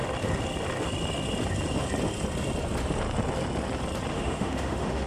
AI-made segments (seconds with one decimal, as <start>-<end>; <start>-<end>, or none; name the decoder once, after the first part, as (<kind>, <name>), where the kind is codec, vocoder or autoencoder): 4.1-5.1 (autoencoder, DAC-VAE)